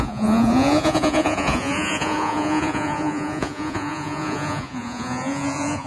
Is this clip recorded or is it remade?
remade